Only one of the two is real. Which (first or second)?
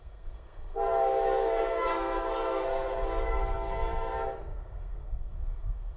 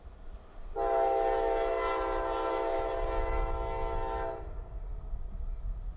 second